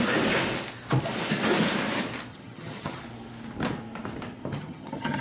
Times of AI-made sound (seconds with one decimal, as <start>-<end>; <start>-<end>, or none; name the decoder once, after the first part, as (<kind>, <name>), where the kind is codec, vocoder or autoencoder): 2.3-3.0 (vocoder, HiFi-GAN); 4.5-5.2